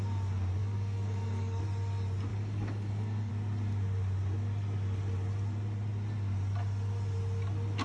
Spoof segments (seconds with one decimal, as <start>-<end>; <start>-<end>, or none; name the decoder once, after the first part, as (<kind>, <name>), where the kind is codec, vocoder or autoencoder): 0.6-1.6 (codec, DAC); 2.3-3.3